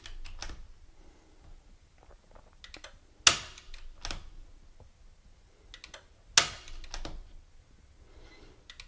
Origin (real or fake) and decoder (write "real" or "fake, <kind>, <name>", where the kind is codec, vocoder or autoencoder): real